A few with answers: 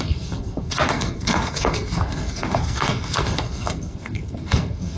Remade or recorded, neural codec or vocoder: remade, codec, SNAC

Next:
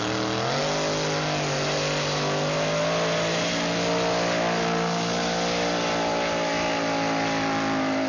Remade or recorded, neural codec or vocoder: recorded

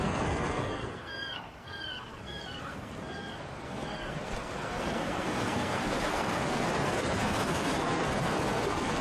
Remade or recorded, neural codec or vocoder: remade, codec, SNAC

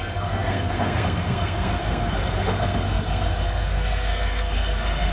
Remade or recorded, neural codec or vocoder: remade, codec, SNAC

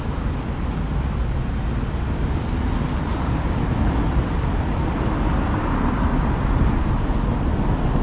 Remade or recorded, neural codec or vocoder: recorded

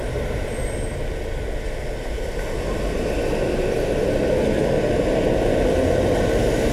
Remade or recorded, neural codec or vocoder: recorded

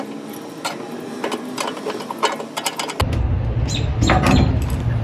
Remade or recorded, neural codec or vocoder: recorded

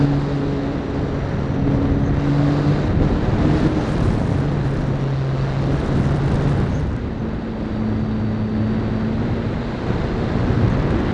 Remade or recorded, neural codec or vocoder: recorded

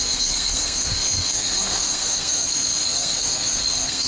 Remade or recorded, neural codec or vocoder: remade, codec, SNAC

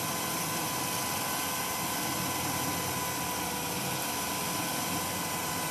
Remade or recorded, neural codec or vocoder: recorded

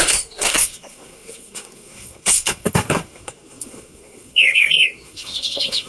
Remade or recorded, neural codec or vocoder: remade, codec, SNAC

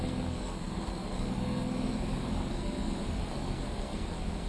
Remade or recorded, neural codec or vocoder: remade, codec, SNAC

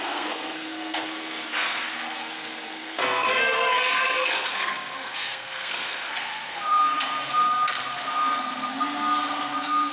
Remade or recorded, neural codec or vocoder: remade, codec, SNAC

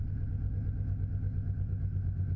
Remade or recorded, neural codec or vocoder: recorded